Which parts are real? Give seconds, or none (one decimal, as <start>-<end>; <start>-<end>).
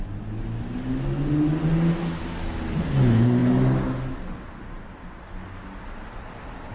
0.0-6.7